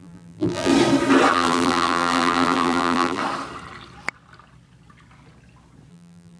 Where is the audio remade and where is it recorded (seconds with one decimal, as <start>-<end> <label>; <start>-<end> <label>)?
0.0-0.7 remade; 0.7-1.3 recorded; 1.3-3.2 remade; 3.2-5.9 recorded; 5.9-6.4 remade